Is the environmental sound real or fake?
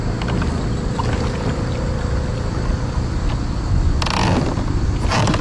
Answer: real